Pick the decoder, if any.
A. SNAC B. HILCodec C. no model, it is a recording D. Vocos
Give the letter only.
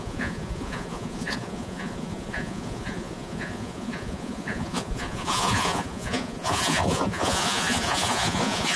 D